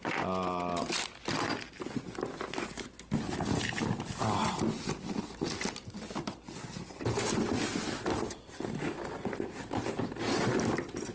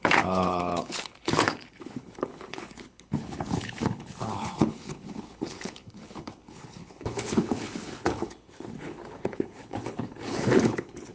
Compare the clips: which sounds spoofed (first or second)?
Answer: second